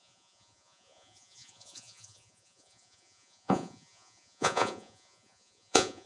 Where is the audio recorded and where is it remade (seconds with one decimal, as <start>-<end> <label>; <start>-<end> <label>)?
0.0-6.1 remade